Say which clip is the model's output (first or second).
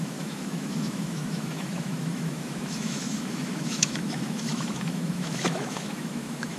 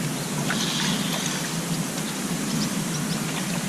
first